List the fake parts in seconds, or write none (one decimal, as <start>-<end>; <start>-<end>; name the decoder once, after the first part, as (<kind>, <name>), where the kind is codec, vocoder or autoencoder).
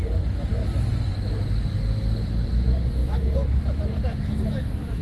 3.0-5.0 (autoencoder, DAC-VAE)